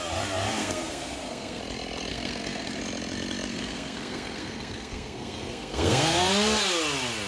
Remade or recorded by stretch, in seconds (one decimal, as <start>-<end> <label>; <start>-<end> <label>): 0.0-0.6 recorded; 0.6-1.6 remade; 1.6-2.1 recorded; 2.1-2.8 remade; 2.8-3.5 recorded; 3.5-6.3 remade; 6.3-7.3 recorded

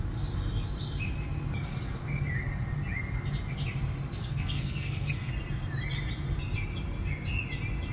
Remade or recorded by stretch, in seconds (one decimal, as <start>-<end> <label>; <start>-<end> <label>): 0.0-4.2 recorded; 4.2-5.3 remade; 5.3-7.9 recorded

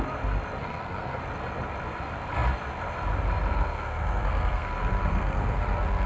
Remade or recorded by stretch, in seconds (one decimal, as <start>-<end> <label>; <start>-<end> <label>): 0.0-0.6 recorded; 0.6-1.2 remade; 1.2-3.5 recorded; 3.5-6.1 remade